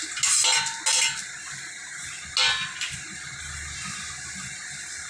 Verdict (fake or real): real